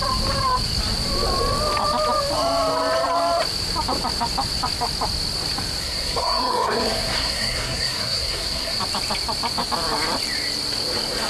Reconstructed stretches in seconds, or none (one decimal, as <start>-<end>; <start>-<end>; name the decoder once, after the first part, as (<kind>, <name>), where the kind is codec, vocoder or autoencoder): 5.8-8.8 (codec, SNAC)